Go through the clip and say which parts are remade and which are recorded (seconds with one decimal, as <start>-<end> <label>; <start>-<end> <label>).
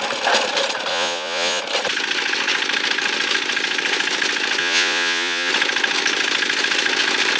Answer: 0.0-0.9 recorded; 0.9-1.6 remade; 1.6-4.6 recorded; 4.6-5.5 remade; 5.5-7.4 recorded